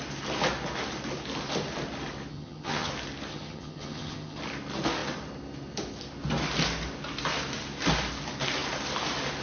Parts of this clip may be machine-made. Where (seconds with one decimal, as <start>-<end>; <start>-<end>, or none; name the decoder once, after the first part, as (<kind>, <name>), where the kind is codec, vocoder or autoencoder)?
2.3-2.9 (vocoder, HiFi-GAN); 3.3-4.4